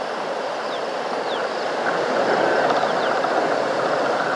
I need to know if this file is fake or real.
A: real